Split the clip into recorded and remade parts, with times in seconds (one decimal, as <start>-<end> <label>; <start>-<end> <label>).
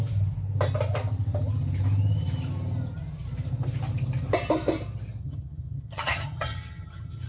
0.0-5.2 recorded; 5.2-7.3 remade